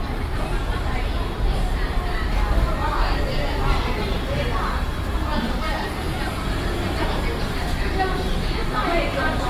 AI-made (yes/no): yes